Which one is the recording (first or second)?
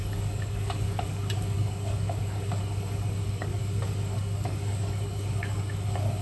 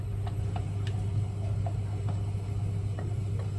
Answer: second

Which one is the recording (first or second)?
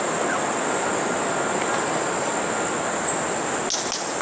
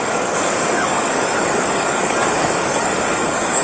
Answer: first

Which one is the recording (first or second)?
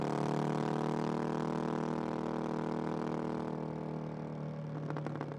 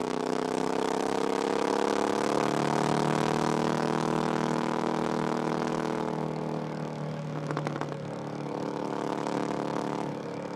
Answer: first